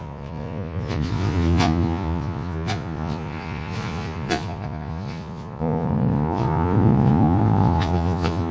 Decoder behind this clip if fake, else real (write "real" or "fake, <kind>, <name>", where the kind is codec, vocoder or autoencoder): fake, vocoder, Vocos